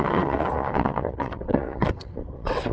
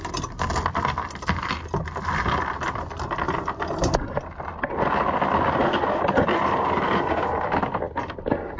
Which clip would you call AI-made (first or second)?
first